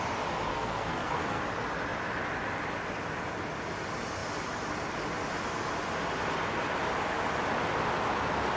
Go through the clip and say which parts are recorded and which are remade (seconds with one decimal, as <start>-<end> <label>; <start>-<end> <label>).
0.0-0.5 recorded; 0.5-1.4 remade; 1.4-8.6 recorded